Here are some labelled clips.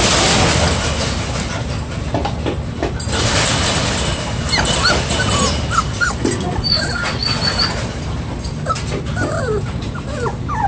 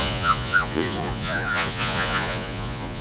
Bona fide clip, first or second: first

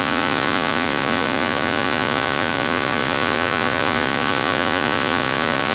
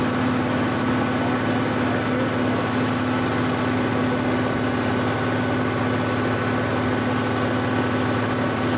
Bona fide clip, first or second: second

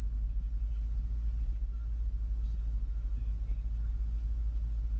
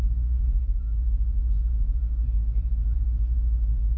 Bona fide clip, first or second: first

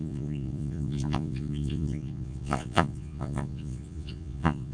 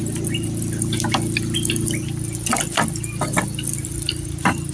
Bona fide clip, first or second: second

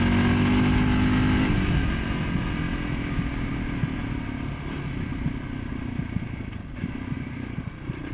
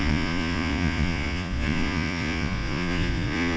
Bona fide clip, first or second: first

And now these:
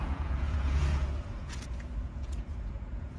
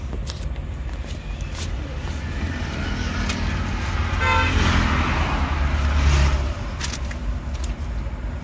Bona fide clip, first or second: second